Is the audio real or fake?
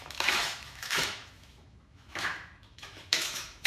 fake